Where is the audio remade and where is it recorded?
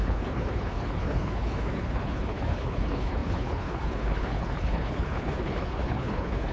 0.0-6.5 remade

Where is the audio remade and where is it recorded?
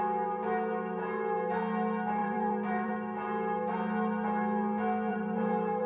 0.0-2.2 recorded; 2.2-2.9 remade; 2.9-5.1 recorded; 5.1-5.9 remade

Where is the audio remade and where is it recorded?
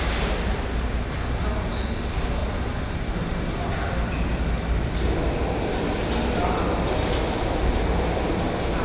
0.0-8.8 recorded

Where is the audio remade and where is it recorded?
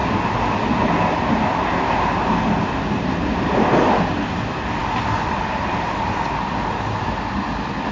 0.0-7.9 recorded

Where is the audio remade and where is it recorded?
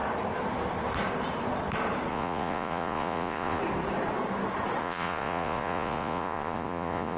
0.0-2.1 recorded; 2.1-3.6 remade; 3.6-4.8 recorded; 4.8-7.2 remade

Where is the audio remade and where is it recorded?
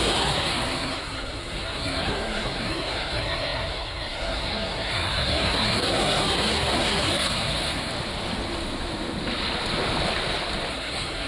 0.0-7.9 remade; 7.9-10.7 recorded; 10.7-11.3 remade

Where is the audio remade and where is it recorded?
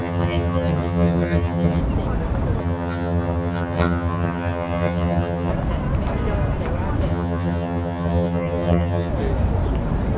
0.0-1.8 remade; 1.8-2.6 recorded; 2.6-5.5 remade; 5.5-7.1 recorded; 7.1-9.1 remade; 9.1-10.2 recorded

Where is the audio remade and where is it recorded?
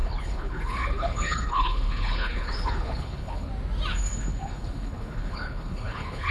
0.0-3.5 remade; 3.5-3.9 recorded; 3.9-6.3 remade